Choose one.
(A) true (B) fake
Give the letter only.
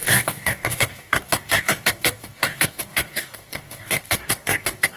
B